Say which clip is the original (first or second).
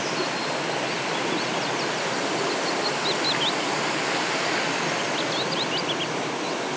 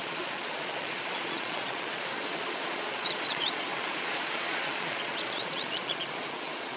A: first